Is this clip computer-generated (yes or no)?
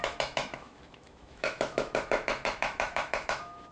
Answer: yes